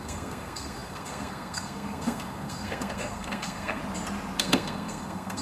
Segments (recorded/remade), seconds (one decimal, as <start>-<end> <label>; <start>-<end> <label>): 0.0-3.8 remade; 3.8-4.4 recorded; 4.4-5.4 remade